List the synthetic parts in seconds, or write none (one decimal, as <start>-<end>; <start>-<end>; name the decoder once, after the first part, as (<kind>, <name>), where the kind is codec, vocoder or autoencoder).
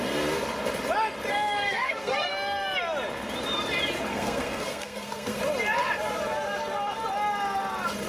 1.3-2.3 (codec, SNAC); 4.1-5.4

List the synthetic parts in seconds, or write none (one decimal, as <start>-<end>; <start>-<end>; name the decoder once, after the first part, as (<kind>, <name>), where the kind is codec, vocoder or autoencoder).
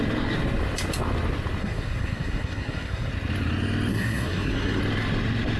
1.6-3.1 (codec, SNAC); 3.9-4.8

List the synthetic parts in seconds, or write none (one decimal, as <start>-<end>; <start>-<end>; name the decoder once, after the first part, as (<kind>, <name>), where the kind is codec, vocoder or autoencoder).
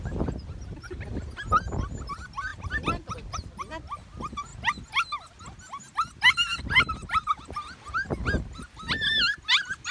none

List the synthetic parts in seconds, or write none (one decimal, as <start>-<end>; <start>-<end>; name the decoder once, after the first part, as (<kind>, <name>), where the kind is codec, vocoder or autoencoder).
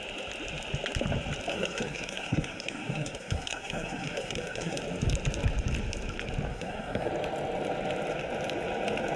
1.5-4.8 (codec, SNAC); 6.5-7.1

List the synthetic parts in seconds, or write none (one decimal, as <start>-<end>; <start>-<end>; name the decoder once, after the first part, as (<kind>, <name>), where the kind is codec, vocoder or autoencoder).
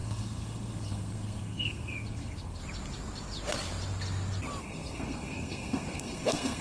0.0-2.6 (codec, SNAC); 4.6-6.6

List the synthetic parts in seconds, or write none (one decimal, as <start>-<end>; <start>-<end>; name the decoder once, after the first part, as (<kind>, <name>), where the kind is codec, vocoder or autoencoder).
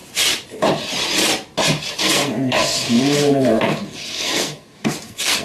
2.0-5.4 (codec, SNAC)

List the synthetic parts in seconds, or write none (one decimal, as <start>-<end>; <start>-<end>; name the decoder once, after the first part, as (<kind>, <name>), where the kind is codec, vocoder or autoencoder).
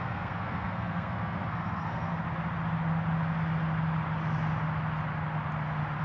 0.0-2.1 (codec, SNAC)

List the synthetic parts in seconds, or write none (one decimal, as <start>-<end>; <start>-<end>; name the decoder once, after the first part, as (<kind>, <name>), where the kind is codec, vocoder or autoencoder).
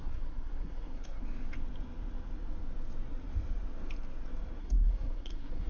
0.0-1.2 (codec, SNAC); 4.6-5.7